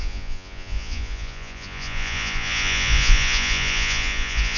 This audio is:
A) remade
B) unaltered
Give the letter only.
A